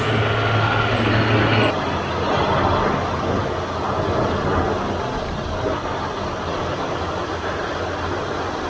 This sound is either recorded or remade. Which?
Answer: recorded